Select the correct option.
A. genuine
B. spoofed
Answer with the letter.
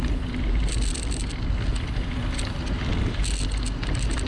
A